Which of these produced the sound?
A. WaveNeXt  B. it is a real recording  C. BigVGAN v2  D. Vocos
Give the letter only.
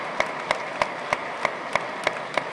B